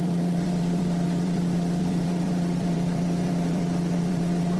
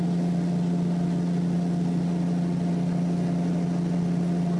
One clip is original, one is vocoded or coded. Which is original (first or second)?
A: second